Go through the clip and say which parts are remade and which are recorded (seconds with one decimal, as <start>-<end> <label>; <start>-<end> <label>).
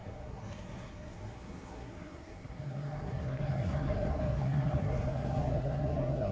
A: 0.0-6.3 remade